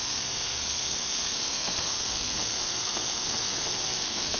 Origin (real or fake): fake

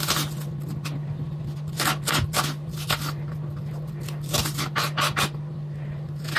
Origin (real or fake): real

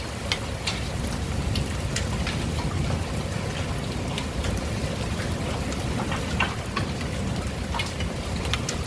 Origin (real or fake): real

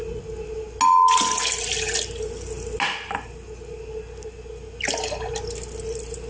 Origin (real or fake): real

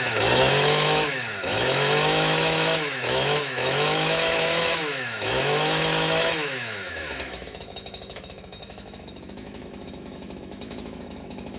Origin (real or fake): fake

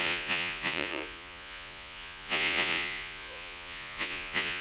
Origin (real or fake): fake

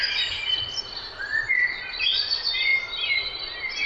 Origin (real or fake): real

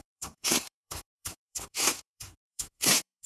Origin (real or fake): fake